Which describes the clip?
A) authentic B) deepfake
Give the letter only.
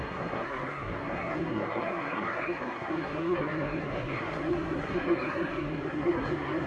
B